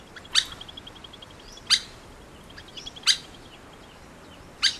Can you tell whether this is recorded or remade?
recorded